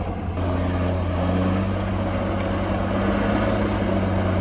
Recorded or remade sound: recorded